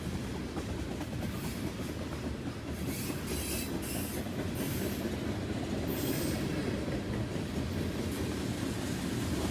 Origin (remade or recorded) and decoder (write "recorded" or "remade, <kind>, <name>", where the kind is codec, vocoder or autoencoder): recorded